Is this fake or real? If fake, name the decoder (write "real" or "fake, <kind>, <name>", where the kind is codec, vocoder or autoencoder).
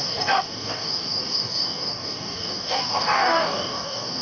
fake, codec, DAC